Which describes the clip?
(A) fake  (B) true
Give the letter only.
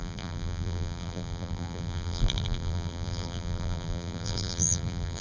A